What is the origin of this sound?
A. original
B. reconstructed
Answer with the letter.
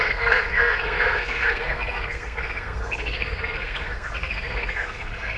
B